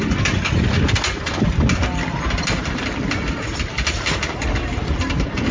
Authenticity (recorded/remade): recorded